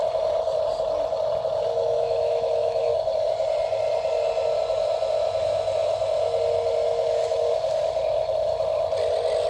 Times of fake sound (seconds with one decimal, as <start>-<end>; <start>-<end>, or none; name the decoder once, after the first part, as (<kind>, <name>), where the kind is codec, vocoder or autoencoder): 1.8-2.9 (autoencoder, DAC-VAE)